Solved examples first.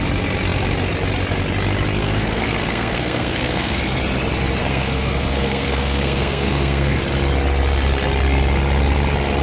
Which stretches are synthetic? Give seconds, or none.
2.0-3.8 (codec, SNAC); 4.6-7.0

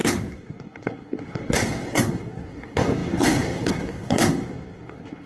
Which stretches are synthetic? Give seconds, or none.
0.0-5.3 (codec, SNAC)